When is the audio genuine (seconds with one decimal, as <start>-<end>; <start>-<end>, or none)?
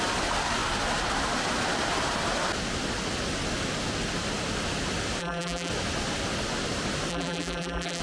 0.0-5.2; 5.7-7.1